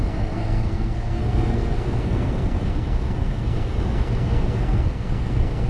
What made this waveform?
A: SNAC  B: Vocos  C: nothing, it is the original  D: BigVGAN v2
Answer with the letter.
A